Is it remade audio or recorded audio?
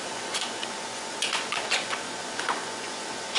remade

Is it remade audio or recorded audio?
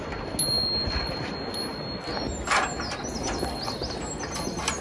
recorded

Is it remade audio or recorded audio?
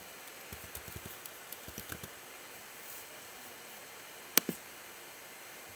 recorded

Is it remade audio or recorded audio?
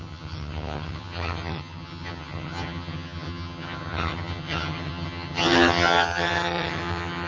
remade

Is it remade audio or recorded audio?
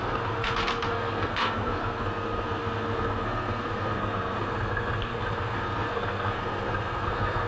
remade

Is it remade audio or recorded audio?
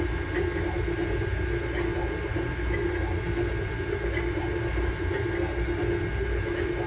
recorded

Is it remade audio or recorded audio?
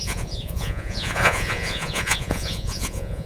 remade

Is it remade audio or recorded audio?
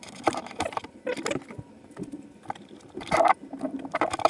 remade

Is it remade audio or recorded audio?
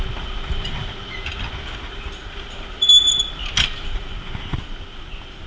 recorded